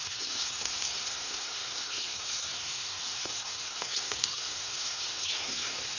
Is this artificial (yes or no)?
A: yes